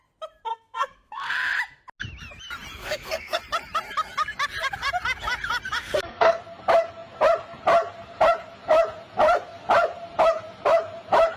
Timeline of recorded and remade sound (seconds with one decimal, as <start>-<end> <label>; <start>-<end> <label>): 0.0-0.5 recorded; 0.5-1.3 remade; 1.3-2.8 recorded; 2.8-3.4 remade; 3.4-5.8 recorded; 5.8-6.4 remade; 6.4-11.4 recorded